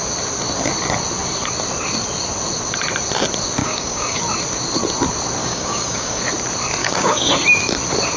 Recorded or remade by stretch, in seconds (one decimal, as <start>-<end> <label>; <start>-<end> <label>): 0.0-3.6 recorded; 3.6-4.2 remade; 4.2-5.4 recorded; 5.4-6.2 remade; 6.2-6.8 recorded; 6.8-7.3 remade; 7.3-8.2 recorded